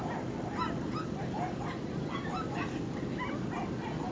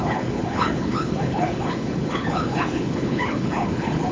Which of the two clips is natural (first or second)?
first